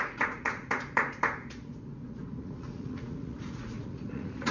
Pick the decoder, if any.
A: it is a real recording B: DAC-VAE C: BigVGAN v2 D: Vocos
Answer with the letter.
D